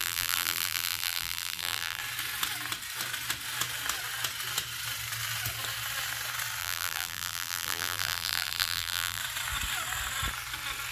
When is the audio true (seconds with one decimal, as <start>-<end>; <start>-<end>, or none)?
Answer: 2.0-6.6; 9.2-10.9